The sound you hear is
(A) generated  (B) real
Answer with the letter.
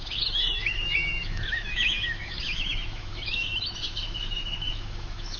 A